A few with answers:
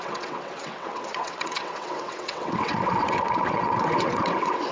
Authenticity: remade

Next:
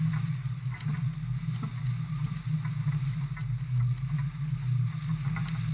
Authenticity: recorded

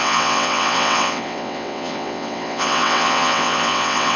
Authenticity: remade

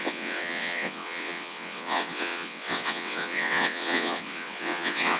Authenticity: remade